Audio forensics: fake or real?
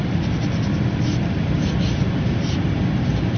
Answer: real